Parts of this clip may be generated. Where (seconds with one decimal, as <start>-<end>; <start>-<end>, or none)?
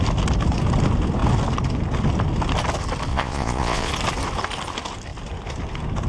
3.1-3.9